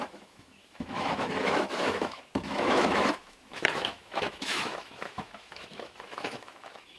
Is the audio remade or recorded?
remade